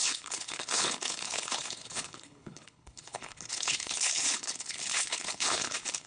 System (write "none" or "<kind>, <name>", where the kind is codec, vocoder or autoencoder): codec, HILCodec